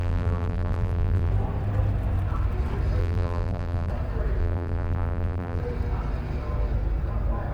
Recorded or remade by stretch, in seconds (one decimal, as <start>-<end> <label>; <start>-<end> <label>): 0.0-1.3 remade; 1.3-3.0 recorded; 3.0-3.9 remade; 3.9-4.4 recorded; 4.4-5.6 remade; 5.6-7.5 recorded